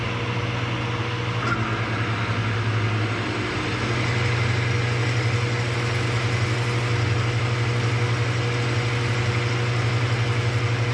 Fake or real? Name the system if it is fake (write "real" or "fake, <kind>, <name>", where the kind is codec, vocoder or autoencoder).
real